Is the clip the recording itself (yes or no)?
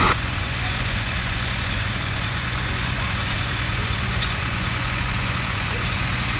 no